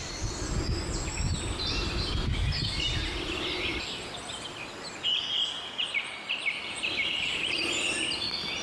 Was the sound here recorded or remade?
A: recorded